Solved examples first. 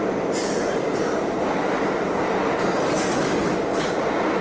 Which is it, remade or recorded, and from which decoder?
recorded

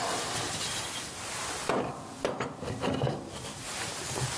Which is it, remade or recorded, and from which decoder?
recorded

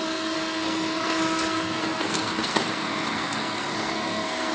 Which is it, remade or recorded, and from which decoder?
remade, codec, SNAC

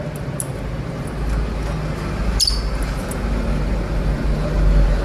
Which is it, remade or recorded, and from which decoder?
recorded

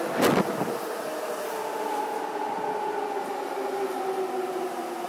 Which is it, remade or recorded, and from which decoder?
recorded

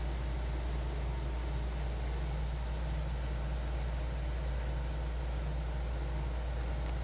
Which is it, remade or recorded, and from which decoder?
recorded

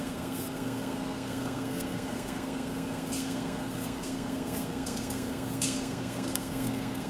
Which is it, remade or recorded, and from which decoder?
remade, codec, SNAC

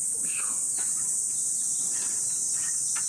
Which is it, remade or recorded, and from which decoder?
recorded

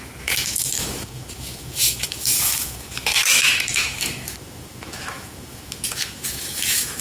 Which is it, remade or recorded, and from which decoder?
remade, autoencoder, DAC-VAE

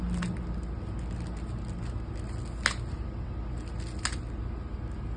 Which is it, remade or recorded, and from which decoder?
recorded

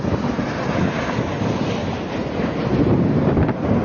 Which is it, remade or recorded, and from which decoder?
recorded